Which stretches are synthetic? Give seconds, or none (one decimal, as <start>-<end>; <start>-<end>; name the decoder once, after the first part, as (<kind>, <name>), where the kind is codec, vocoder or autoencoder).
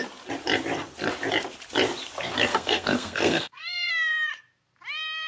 2.5-3.9 (codec, SNAC)